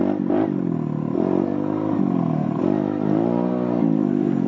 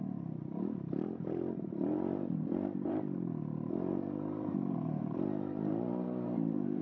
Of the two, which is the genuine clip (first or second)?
first